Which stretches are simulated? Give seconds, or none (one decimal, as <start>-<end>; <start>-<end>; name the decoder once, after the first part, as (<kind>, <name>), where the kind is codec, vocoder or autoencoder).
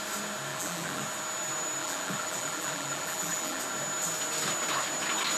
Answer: 0.5-1.0 (vocoder, BigVGAN v2); 1.8-3.6